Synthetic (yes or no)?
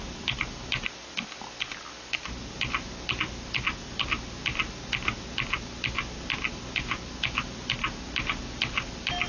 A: no